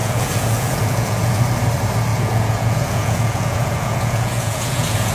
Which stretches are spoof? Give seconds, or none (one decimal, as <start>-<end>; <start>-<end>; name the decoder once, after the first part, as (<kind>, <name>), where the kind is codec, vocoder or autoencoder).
0.0-1.4 (vocoder, Vocos); 2.1-5.1